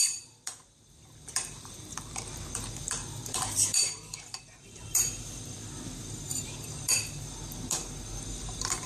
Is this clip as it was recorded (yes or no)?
no